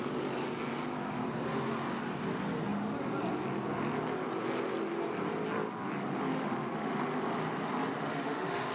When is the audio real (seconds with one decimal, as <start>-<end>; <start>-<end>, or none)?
0.0-6.3; 7.0-8.0